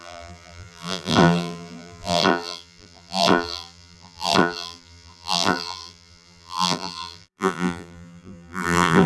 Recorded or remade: remade